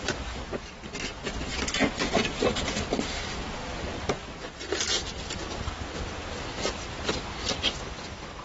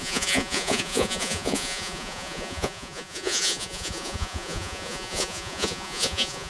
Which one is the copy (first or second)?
second